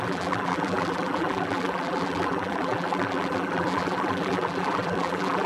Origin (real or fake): fake